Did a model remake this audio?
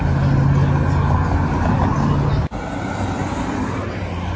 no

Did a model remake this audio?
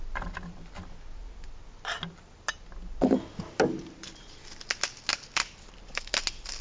no